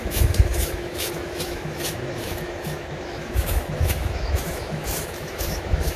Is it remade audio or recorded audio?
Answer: remade